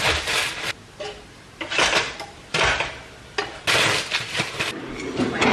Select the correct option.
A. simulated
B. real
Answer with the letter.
B